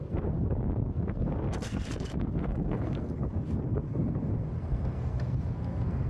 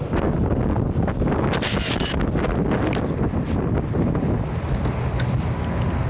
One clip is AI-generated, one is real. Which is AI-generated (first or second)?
first